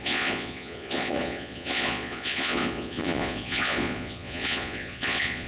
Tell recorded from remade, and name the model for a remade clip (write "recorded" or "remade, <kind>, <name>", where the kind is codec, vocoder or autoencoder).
remade, vocoder, Vocos